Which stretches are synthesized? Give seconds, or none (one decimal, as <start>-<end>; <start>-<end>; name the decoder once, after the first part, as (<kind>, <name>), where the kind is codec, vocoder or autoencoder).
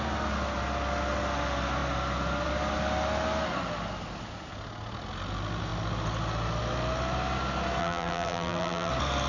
7.8-8.9 (vocoder, BigVGAN v2)